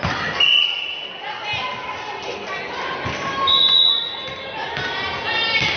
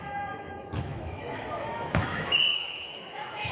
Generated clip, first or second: second